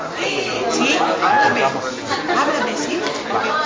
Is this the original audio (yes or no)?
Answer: yes